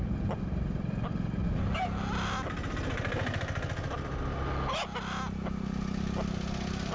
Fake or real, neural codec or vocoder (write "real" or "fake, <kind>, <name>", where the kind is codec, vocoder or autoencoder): real